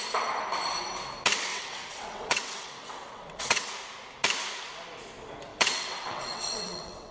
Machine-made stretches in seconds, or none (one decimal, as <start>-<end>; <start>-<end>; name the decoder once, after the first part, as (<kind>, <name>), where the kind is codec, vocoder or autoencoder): 1.5-3.7 (vocoder, WaveNeXt); 5.5-7.1